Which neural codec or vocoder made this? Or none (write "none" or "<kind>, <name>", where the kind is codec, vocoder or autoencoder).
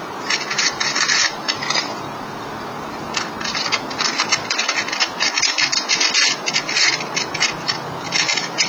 none